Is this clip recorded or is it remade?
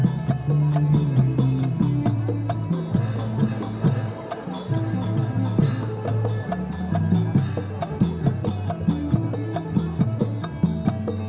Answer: recorded